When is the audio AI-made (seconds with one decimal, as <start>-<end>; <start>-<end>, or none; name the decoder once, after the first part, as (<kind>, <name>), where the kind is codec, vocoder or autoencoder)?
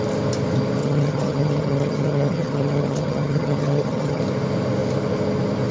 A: 0.8-4.2 (vocoder, HiFi-GAN)